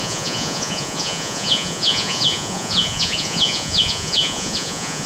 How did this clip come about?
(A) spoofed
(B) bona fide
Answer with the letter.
A